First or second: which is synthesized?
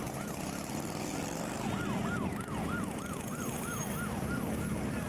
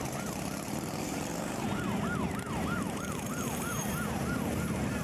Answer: second